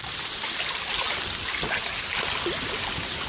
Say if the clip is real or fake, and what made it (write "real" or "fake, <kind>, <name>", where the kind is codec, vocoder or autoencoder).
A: real